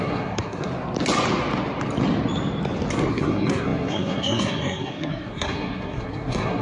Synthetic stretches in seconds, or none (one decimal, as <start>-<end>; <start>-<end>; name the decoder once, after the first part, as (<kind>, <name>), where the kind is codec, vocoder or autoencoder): 0.0-0.7 (codec, SNAC); 3.1-6.6

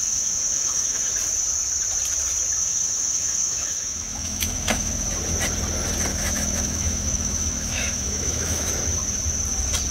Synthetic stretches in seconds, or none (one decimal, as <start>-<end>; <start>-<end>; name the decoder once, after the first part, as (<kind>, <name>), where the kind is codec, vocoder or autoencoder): 0.0-1.1 (autoencoder, DAC-VAE); 2.6-4.9; 6.1-8.7

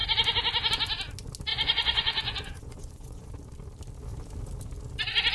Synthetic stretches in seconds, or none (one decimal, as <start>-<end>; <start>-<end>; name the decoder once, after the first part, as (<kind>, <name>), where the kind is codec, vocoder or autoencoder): 1.5-3.3 (vocoder, Vocos)

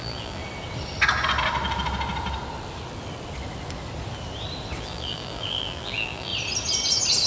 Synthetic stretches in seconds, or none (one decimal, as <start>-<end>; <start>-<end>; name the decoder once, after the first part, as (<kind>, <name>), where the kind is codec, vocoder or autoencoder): 0.0-0.4 (vocoder, BigVGAN v2); 4.8-6.3

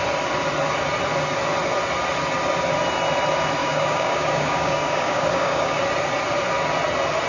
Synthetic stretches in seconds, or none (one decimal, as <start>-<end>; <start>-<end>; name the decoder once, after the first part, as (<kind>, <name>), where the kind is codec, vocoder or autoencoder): 3.6-5.8 (codec, DAC)

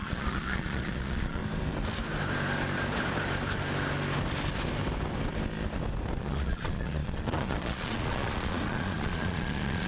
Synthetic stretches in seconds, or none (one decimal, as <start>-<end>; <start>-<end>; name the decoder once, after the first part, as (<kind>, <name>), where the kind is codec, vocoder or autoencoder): 0.0-1.4 (vocoder, Vocos); 6.2-9.9

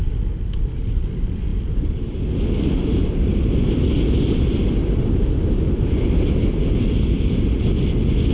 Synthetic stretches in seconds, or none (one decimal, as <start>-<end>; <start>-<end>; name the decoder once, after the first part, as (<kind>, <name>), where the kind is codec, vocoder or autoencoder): none